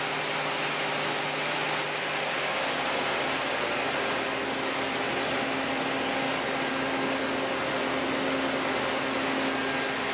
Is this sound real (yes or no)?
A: yes